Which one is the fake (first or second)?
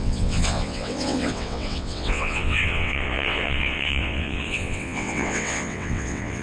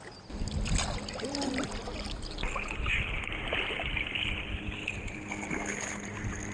first